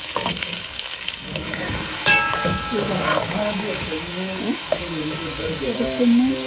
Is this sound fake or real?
fake